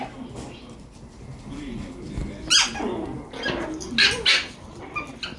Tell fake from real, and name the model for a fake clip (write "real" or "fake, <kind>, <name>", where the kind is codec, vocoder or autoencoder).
real